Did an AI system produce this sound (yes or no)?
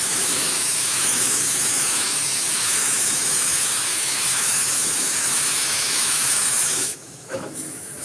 yes